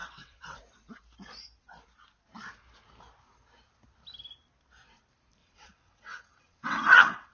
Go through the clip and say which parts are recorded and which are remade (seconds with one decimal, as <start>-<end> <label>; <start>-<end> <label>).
0.0-0.6 remade; 0.6-5.4 recorded; 5.4-7.3 remade

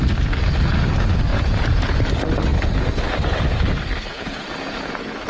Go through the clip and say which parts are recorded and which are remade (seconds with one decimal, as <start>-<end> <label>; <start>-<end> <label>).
0.0-1.3 recorded; 1.3-2.0 remade; 2.0-4.1 recorded; 4.1-5.3 remade

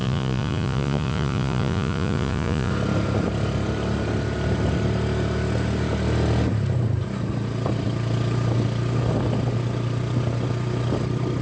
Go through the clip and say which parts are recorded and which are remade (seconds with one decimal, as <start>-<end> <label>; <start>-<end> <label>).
0.0-2.7 remade; 2.7-11.4 recorded

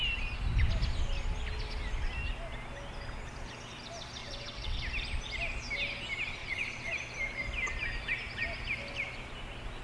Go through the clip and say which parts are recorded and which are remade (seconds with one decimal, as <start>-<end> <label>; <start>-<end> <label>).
0.0-4.2 recorded; 4.2-4.8 remade; 4.8-6.4 recorded; 6.4-6.9 remade; 6.9-9.8 recorded

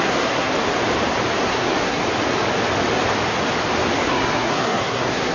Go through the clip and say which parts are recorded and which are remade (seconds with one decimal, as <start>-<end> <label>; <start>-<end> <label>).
0.0-0.5 remade; 0.5-1.4 recorded; 1.4-2.0 remade; 2.0-4.0 recorded; 4.0-5.3 remade

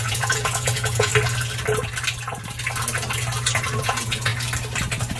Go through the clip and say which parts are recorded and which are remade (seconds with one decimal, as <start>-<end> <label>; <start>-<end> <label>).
0.0-1.1 remade; 1.1-3.8 recorded; 3.8-4.3 remade; 4.3-5.2 recorded